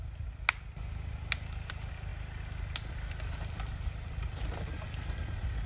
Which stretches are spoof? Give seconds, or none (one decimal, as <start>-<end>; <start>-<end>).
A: none